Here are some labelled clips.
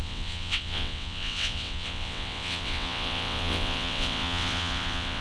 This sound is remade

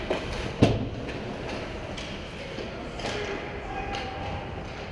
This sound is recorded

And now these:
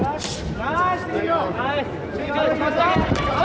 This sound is remade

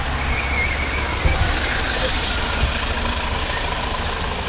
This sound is recorded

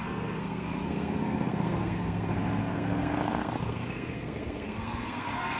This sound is remade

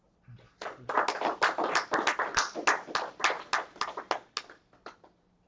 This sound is recorded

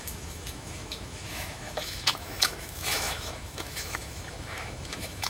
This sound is remade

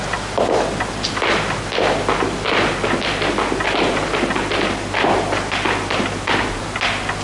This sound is recorded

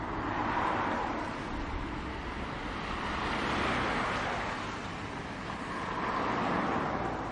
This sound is recorded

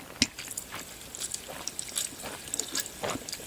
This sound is recorded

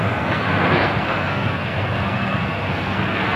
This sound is remade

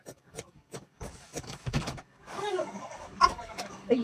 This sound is remade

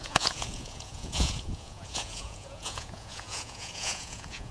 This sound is remade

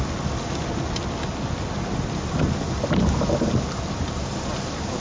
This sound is recorded